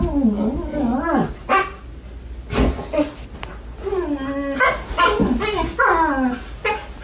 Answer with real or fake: real